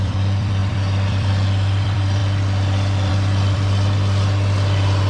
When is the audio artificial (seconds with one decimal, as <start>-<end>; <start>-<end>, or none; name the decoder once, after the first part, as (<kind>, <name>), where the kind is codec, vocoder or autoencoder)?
0.0-2.2 (vocoder, BigVGAN v2); 3.1-5.1